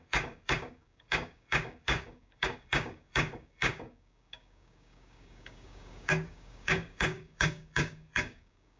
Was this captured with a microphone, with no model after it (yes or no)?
no